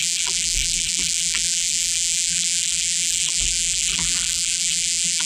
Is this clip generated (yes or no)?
yes